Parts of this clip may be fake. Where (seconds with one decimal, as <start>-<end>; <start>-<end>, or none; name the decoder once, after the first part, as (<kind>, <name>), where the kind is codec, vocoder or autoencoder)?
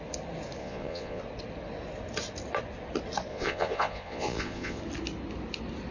0.6-1.2 (vocoder, Vocos); 3.3-4.8